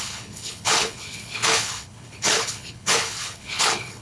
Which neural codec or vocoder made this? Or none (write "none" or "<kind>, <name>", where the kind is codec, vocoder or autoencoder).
codec, HILCodec